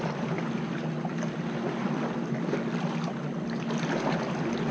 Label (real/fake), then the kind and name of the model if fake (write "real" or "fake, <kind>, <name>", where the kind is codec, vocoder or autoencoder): real